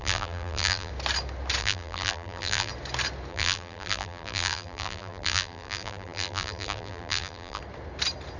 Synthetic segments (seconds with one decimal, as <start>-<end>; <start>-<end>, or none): 0.0-0.9; 1.6-2.7; 3.3-7.6